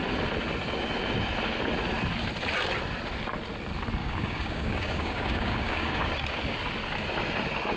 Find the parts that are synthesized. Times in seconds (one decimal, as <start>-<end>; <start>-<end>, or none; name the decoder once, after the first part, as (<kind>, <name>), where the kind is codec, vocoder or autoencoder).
4.0-6.1 (codec, DAC)